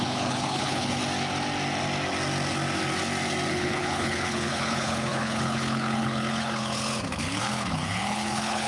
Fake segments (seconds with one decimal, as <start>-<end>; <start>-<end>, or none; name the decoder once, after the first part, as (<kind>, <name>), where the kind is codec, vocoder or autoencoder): 0.0-1.0 (codec, HILCodec); 3.5-8.7

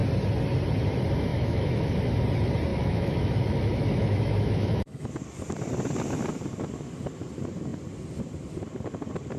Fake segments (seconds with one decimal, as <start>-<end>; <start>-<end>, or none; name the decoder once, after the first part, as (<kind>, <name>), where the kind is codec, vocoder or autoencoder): 1.3-2.1 (autoencoder, DAC-VAE); 2.7-5.1

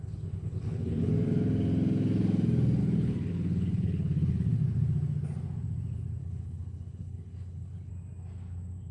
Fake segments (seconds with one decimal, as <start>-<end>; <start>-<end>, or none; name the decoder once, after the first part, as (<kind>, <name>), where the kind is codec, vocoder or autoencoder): 0.0-1.1 (codec, HILCodec); 2.8-4.6; 6.2-7.9

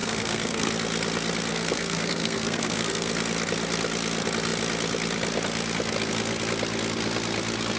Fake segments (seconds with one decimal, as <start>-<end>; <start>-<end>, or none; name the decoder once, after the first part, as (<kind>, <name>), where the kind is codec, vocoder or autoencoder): 0.0-0.7 (codec, SNAC); 1.5-3.1

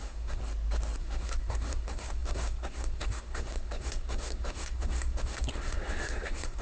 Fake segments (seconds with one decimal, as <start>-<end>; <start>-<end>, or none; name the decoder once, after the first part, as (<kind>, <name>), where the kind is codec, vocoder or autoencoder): 0.0-0.4 (codec, SNAC); 1.0-6.6

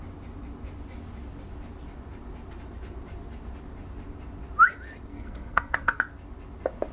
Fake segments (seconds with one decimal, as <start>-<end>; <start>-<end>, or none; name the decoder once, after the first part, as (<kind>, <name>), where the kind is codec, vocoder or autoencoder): 5.1-6.0 (codec, SNAC)

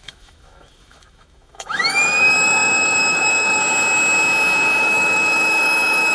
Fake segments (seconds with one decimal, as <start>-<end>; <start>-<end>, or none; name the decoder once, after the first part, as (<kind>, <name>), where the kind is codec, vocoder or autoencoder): 0.0-3.6 (autoencoder, DAC-VAE); 4.8-6.1

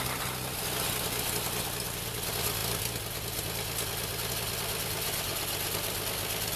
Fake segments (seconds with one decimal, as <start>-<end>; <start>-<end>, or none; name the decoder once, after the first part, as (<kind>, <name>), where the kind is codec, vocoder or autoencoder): none